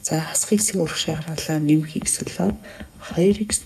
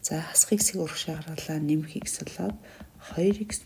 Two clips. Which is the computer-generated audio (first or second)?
first